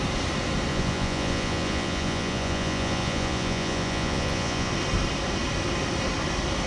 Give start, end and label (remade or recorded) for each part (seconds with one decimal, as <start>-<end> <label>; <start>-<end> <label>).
0.0-0.7 recorded; 0.7-4.7 remade; 4.7-6.7 recorded